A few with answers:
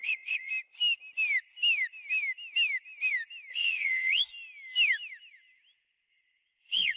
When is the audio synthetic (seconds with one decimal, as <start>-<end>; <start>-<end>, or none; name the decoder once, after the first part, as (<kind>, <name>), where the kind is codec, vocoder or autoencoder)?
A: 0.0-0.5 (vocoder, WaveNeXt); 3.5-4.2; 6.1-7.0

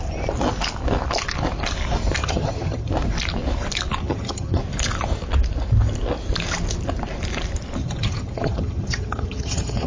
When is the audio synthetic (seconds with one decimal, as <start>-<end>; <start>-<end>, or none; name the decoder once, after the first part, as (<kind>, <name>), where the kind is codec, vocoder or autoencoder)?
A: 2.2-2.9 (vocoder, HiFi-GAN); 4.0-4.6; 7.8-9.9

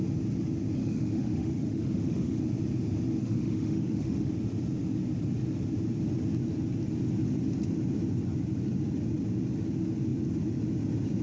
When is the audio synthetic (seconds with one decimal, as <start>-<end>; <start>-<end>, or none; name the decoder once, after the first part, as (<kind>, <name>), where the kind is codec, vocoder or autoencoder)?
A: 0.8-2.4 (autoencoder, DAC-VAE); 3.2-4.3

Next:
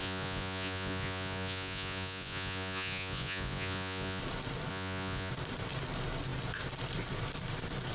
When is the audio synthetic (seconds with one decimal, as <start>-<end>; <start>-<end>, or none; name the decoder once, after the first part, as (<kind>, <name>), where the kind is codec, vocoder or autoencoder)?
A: 0.0-4.2 (vocoder, Vocos); 4.7-5.3

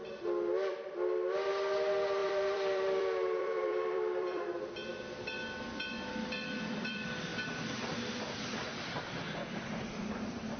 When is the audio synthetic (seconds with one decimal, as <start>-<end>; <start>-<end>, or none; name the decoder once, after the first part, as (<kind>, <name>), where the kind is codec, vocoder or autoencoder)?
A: 2.2-4.4 (vocoder, BigVGAN v2); 7.3-7.8